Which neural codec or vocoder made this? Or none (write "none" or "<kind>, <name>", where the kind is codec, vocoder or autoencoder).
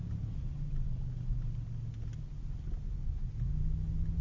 none